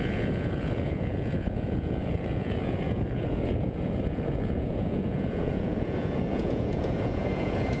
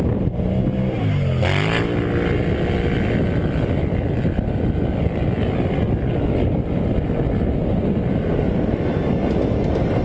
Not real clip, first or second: first